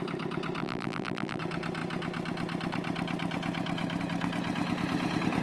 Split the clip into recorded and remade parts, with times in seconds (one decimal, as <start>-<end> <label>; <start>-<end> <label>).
0.0-0.6 recorded; 0.6-1.4 remade; 1.4-5.4 recorded